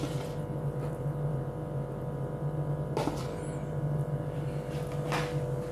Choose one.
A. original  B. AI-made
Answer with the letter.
A